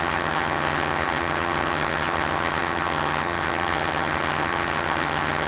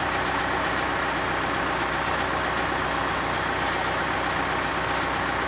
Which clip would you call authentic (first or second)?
second